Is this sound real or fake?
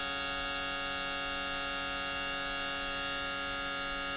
real